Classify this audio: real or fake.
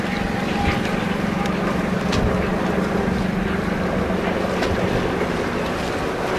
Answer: real